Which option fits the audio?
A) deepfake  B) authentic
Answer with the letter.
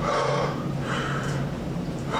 A